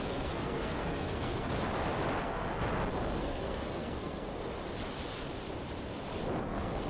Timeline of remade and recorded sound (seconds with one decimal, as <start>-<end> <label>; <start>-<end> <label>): 0.0-1.5 remade; 1.5-2.2 recorded; 2.2-2.6 remade; 2.6-3.2 recorded; 3.2-4.3 remade; 4.3-6.4 recorded; 6.4-6.9 remade